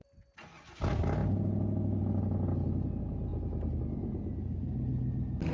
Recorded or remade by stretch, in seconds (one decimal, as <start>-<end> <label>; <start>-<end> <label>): 0.0-5.5 recorded